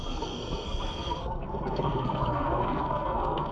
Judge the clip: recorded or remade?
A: remade